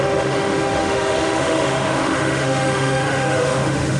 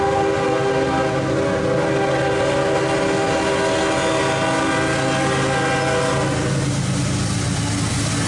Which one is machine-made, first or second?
first